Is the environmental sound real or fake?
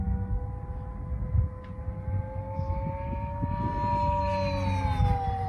real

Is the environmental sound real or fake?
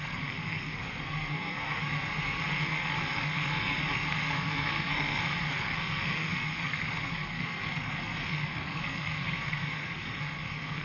fake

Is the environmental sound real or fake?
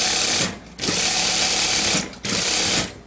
real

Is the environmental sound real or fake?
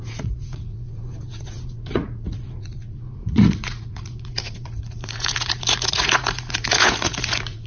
fake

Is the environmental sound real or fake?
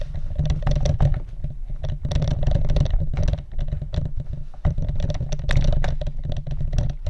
real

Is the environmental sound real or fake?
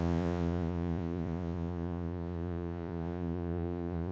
fake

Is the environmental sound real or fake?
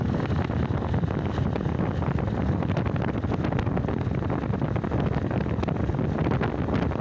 real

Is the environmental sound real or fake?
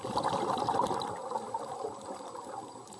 real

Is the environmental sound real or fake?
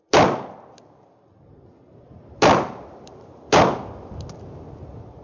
real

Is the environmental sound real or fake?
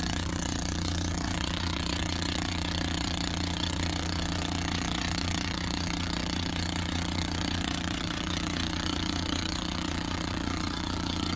fake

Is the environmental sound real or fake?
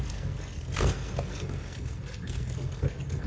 fake